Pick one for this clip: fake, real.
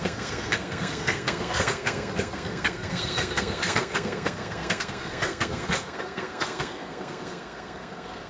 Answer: fake